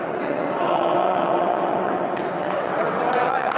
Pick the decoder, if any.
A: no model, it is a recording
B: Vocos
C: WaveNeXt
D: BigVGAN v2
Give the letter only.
C